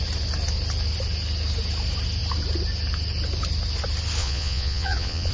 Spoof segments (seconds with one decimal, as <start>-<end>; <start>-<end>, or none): 4.2-5.3